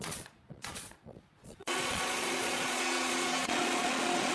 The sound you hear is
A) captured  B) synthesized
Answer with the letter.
B